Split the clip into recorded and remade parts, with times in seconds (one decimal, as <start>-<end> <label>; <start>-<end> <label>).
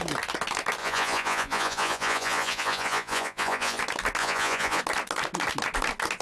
0.0-0.8 recorded; 0.8-3.8 remade; 3.8-4.2 recorded; 4.2-4.8 remade; 4.8-6.2 recorded